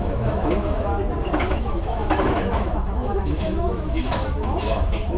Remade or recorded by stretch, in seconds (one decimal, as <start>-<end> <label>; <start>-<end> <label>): 0.0-0.9 remade; 0.9-1.4 recorded; 1.4-5.2 remade